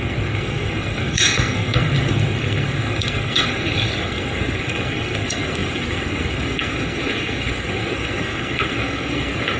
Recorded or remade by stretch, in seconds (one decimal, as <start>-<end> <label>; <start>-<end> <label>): 0.0-9.6 remade